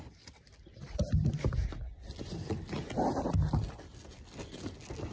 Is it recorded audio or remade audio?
recorded